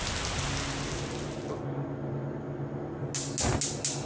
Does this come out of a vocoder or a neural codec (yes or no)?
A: no